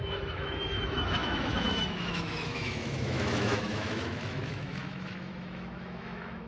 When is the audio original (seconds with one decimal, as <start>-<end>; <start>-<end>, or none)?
none